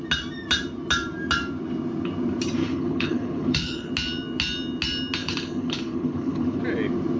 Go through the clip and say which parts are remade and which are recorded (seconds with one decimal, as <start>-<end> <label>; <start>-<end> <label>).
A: 0.0-2.6 recorded; 2.6-3.9 remade; 3.9-5.2 recorded; 5.2-6.6 remade; 6.6-7.2 recorded